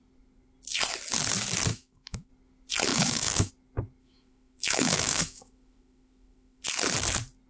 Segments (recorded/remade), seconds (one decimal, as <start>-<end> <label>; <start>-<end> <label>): 0.0-1.7 recorded; 1.7-2.3 remade; 2.3-2.9 recorded; 2.9-3.5 remade; 3.5-4.0 recorded; 4.0-6.6 remade; 6.6-7.5 recorded